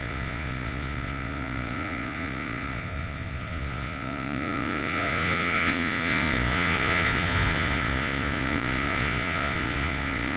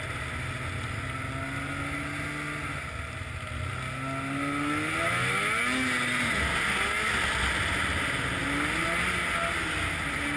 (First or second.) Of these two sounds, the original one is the second